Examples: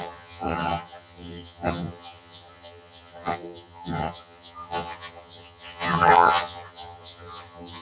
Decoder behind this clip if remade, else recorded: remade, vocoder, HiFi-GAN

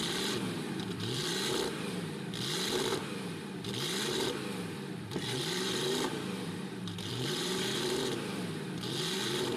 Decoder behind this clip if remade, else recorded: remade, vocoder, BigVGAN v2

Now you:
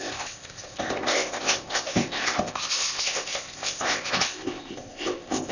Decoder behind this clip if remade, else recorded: remade, codec, ZipCodec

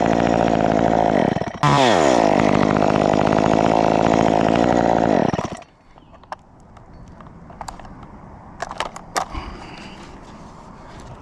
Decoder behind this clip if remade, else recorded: recorded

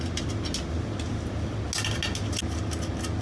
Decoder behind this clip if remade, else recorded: recorded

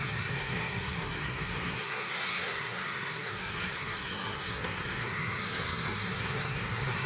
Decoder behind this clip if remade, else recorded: remade, codec, SNAC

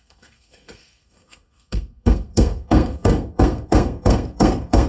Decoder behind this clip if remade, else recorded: remade, codec, SNAC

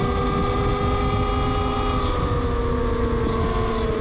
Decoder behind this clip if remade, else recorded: recorded